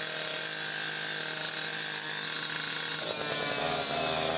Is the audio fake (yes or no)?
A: no